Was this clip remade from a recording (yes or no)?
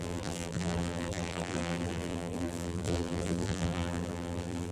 yes